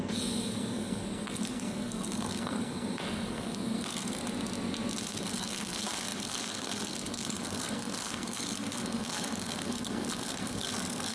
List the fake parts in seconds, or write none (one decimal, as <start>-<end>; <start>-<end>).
0.0-4.2; 5.0-11.1